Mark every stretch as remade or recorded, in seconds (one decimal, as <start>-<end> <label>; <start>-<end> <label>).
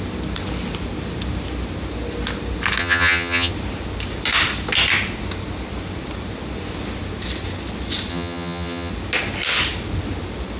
0.0-2.8 recorded; 2.8-3.5 remade; 3.5-8.1 recorded; 8.1-8.9 remade; 8.9-10.6 recorded